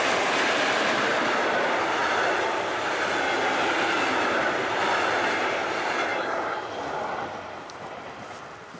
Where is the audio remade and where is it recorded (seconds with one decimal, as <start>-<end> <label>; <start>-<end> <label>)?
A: 0.0-2.0 recorded; 2.0-3.0 remade; 3.0-6.1 recorded; 6.1-8.4 remade; 8.4-8.8 recorded